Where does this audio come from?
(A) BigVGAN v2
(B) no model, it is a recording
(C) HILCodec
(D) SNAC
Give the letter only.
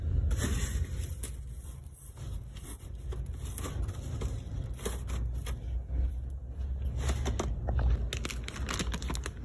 B